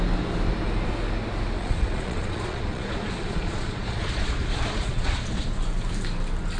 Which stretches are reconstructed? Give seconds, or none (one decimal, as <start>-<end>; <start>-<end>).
1.6-5.6